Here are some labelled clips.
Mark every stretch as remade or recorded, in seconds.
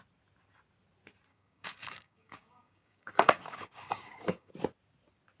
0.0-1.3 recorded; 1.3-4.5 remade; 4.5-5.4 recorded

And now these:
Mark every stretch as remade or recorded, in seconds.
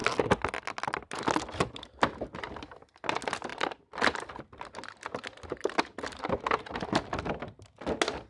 0.0-8.3 recorded